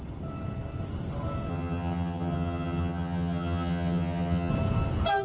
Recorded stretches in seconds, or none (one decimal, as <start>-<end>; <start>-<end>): 0.0-1.5; 4.5-5.2